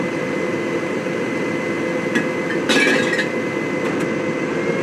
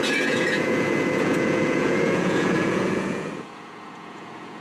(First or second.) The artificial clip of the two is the second